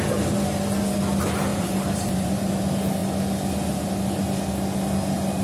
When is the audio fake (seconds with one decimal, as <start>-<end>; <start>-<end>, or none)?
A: 1.5-2.5